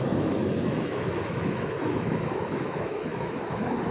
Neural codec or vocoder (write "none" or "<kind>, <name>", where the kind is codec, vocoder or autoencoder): autoencoder, DAC-VAE